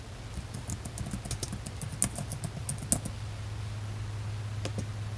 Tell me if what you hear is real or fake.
real